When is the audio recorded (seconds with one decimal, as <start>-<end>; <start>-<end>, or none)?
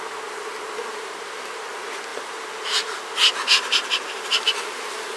0.0-0.9; 1.7-2.1